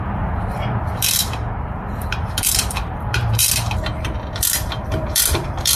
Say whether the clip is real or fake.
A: fake